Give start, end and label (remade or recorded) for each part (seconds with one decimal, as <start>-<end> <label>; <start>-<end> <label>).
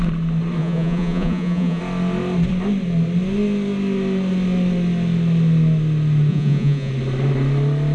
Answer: 0.0-0.6 recorded; 0.6-1.8 remade; 1.8-6.3 recorded; 6.3-6.9 remade; 6.9-7.9 recorded